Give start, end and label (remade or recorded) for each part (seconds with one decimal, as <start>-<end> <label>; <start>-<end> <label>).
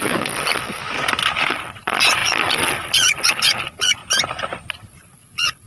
0.0-0.8 remade; 0.8-1.5 recorded; 1.5-4.0 remade; 4.0-4.7 recorded; 4.7-5.7 remade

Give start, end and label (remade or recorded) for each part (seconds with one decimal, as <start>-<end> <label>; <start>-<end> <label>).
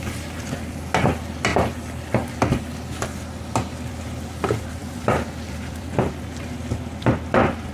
0.0-4.8 recorded; 4.8-6.1 remade; 6.1-7.7 recorded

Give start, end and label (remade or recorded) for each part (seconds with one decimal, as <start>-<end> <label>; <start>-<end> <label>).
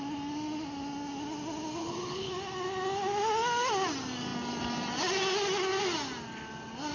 0.0-1.8 recorded; 1.8-2.3 remade; 2.3-6.9 recorded